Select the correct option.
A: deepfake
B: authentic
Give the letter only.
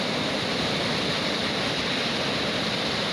B